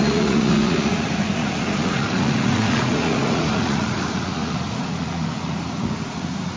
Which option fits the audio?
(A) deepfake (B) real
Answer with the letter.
A